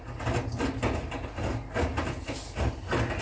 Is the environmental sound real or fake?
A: real